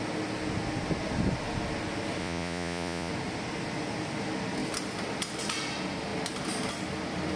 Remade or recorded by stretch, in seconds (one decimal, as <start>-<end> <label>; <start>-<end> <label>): 0.0-2.2 recorded; 2.2-3.1 remade; 3.1-7.4 recorded